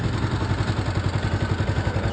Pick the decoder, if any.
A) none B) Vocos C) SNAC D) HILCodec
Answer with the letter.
A